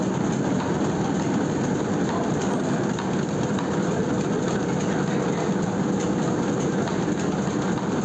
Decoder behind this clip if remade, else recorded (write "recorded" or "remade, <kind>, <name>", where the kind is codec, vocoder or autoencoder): recorded